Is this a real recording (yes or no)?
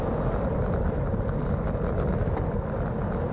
yes